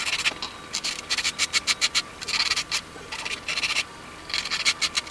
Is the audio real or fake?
real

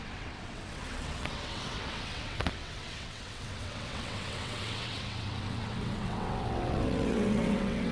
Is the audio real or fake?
fake